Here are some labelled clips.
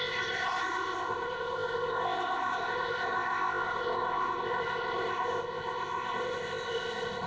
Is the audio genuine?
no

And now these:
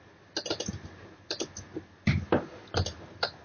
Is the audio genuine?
yes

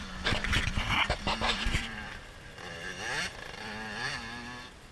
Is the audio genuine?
no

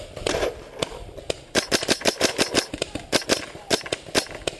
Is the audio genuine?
yes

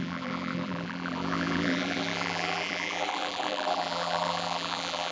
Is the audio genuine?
no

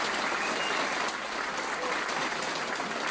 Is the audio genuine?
yes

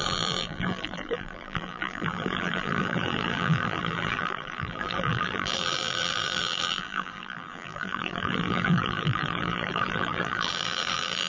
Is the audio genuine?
no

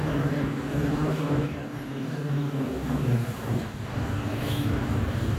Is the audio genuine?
no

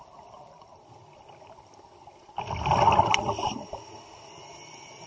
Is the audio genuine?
yes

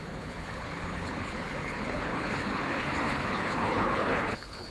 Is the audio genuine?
no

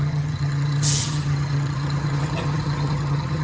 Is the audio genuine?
no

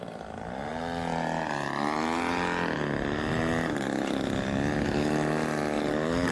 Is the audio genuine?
yes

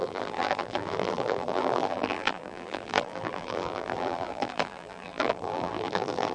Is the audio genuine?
no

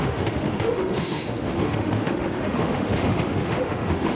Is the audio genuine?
no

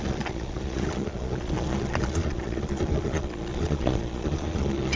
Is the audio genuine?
no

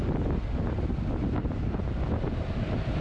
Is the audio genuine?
yes